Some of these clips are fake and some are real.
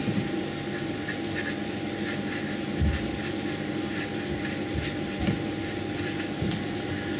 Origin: real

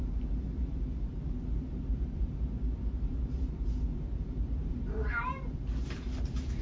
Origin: fake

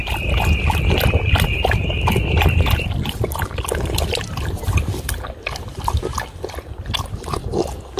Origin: real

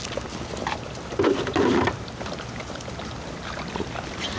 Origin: real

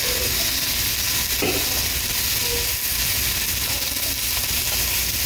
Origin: real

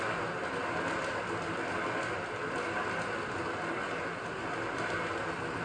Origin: real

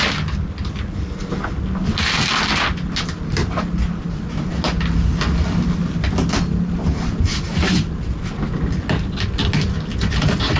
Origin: real